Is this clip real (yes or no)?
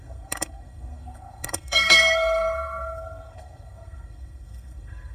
no